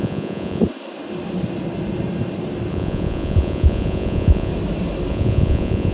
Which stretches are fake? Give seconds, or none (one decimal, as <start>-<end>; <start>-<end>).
0.0-0.6; 2.7-4.5; 5.1-5.9